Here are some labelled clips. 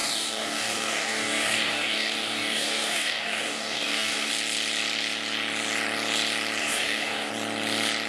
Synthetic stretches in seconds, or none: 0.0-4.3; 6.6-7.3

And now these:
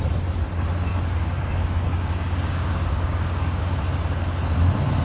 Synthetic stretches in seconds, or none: 0.9-3.6